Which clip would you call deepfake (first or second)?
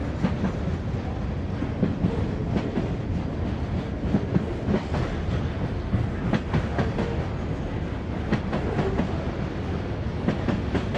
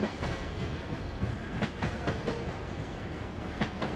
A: second